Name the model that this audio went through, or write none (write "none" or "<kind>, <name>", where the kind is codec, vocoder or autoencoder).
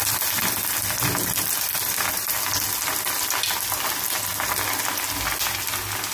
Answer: none